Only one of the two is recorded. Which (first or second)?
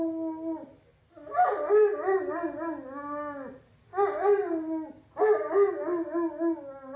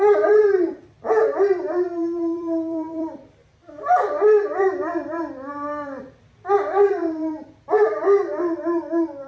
first